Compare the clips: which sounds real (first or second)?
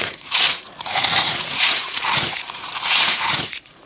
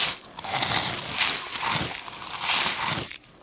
second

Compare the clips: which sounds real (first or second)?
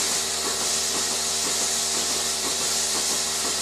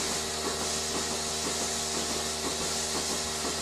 second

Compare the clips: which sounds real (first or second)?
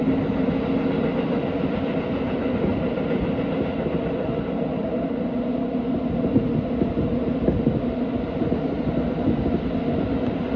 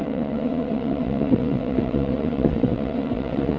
first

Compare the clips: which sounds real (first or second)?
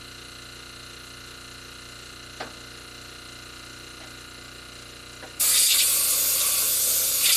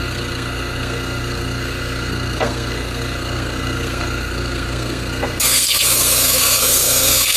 first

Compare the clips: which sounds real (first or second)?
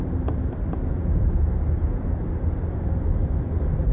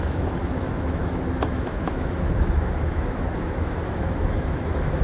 first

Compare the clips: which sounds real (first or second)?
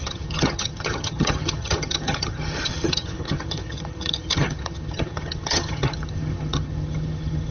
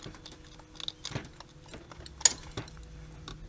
second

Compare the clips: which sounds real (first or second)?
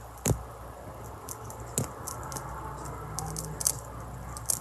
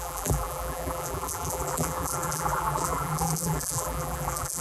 first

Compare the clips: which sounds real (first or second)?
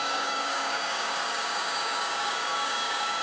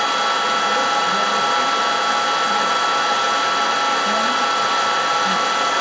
second